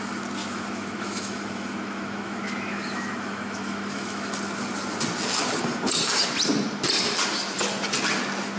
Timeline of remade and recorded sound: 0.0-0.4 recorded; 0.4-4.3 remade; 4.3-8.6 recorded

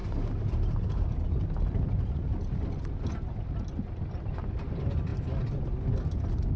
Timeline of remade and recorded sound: 0.0-6.6 recorded